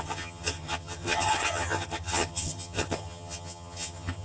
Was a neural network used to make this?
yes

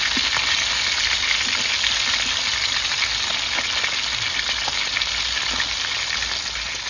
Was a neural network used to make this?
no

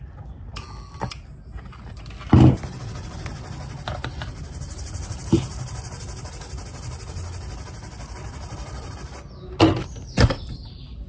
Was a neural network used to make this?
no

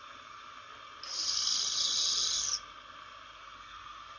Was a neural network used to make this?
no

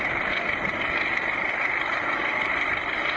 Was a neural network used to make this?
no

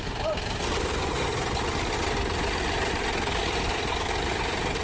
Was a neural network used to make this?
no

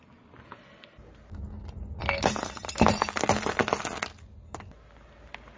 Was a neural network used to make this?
no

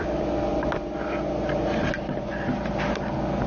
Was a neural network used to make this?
no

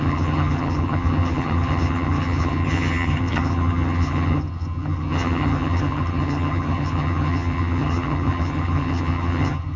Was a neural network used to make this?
yes